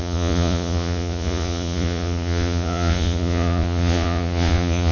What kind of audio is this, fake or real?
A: fake